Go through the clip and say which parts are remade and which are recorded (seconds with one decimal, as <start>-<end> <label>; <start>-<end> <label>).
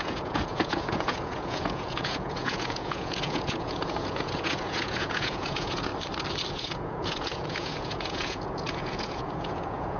0.0-5.9 remade; 5.9-6.5 recorded; 6.5-10.0 remade